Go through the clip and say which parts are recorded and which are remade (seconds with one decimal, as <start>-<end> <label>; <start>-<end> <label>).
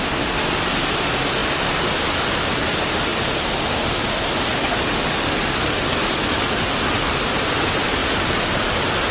0.0-8.0 recorded; 8.0-9.1 remade